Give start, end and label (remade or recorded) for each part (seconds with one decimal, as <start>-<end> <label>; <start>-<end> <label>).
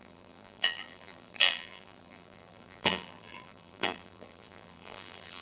0.0-5.4 remade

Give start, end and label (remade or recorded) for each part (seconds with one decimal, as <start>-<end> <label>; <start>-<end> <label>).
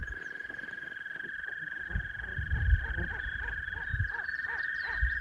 0.0-5.2 recorded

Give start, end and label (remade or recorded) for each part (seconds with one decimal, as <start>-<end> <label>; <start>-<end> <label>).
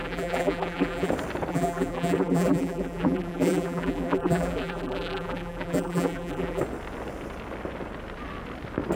0.0-1.1 remade; 1.1-1.5 recorded; 1.5-6.6 remade; 6.6-9.0 recorded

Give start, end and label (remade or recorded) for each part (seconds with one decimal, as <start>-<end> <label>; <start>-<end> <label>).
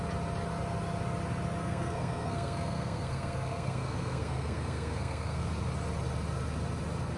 0.0-1.6 recorded; 1.6-5.5 remade; 5.5-7.2 recorded